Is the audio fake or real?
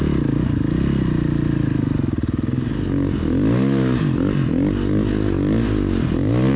real